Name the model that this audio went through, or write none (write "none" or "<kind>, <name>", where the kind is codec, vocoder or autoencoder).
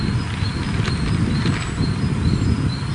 none